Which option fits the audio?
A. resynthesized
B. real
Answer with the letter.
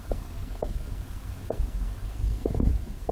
A